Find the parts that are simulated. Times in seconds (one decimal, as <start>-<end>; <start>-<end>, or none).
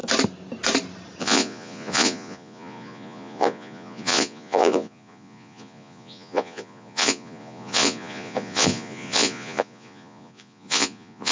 1.2-11.3